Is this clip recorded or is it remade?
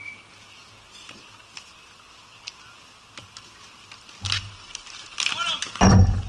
recorded